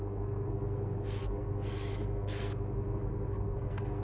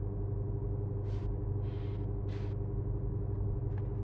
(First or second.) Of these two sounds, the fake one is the first